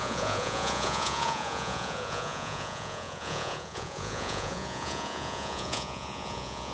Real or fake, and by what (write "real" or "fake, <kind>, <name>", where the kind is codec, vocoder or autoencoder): fake, vocoder, Vocos